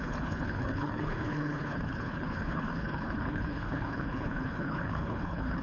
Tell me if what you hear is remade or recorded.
remade